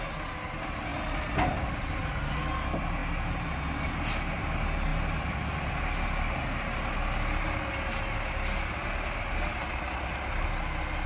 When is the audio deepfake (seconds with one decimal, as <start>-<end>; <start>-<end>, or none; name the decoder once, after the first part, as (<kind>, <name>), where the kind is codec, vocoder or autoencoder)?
none